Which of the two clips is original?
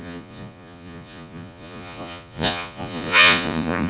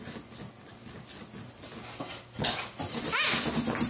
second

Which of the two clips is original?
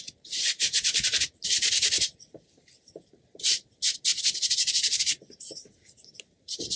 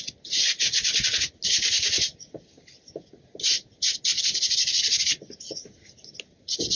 second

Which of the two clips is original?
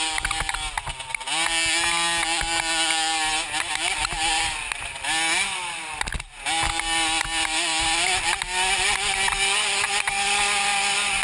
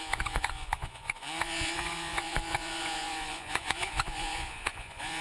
first